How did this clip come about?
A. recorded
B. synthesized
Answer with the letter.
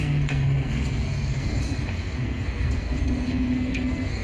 B